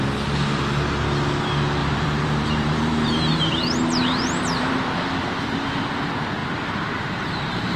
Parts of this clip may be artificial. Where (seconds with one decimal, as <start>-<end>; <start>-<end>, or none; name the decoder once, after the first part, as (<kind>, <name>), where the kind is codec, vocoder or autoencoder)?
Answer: 1.8-4.7 (vocoder, BigVGAN v2); 6.4-7.8